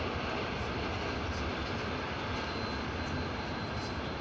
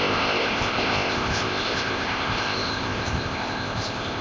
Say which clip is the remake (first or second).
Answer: second